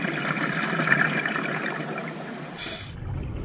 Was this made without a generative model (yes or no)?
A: yes